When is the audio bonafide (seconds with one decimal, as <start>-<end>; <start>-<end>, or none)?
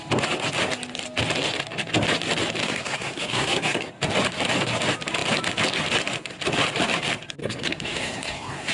0.0-2.6; 3.9-7.4